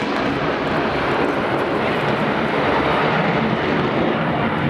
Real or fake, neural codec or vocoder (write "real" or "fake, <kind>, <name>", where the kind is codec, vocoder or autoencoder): fake, vocoder, BigVGAN v2